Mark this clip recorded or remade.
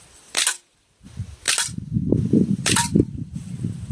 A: recorded